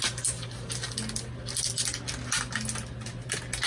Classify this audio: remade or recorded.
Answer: recorded